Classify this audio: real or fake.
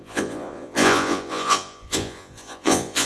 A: fake